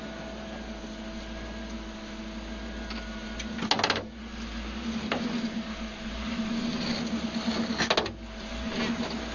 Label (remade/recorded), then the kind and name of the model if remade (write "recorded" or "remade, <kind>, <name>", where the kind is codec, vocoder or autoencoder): recorded